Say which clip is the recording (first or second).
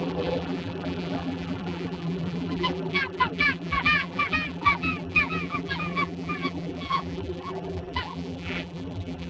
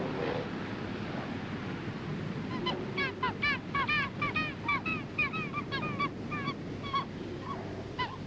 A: second